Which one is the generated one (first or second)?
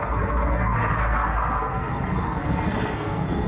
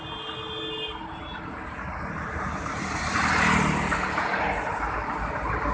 first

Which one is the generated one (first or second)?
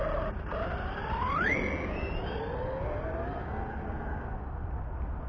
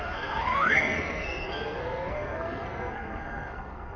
second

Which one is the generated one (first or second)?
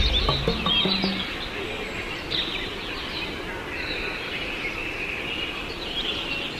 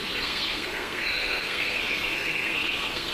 second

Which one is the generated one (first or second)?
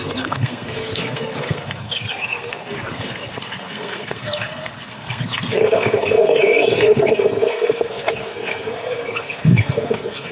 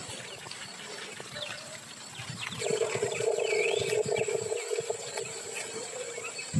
first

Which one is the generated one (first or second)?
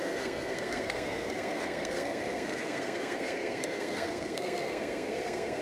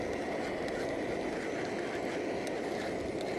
first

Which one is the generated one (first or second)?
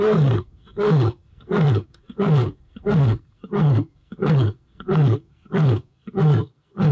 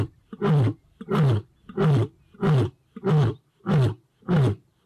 first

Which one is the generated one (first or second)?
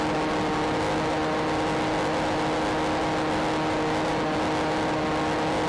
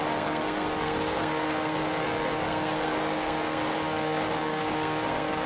second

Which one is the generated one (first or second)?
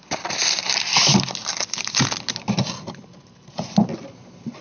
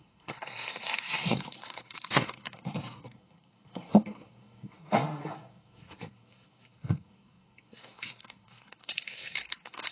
second